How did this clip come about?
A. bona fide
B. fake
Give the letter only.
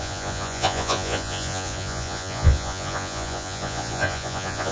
B